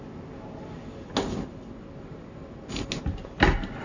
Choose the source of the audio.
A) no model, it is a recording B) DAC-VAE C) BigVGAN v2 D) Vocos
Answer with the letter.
A